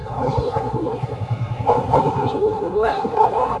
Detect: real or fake fake